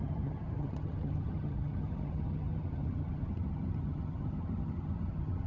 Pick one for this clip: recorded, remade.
remade